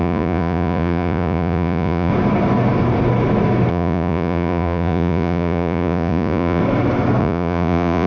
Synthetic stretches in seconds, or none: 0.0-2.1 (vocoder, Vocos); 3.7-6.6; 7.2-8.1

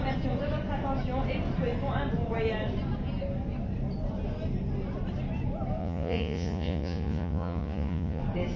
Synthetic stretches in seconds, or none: 5.8-8.2 (vocoder, Vocos)

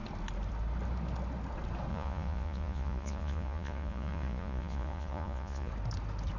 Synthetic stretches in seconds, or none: 1.9-5.7 (vocoder, Vocos)

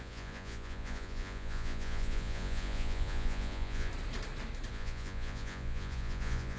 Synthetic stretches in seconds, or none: 0.0-3.9 (vocoder, Vocos); 4.7-6.6

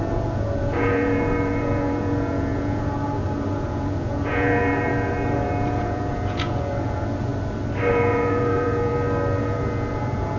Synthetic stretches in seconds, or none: 0.0-7.3 (vocoder, Vocos); 7.9-8.9; 9.4-10.4

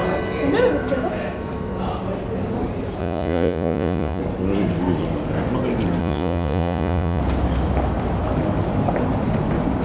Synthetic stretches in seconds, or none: 3.0-4.2 (vocoder, Vocos); 6.0-7.2

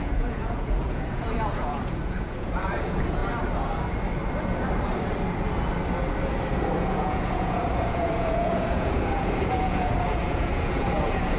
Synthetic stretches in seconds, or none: 0.0-3.2 (vocoder, Vocos); 6.8-11.4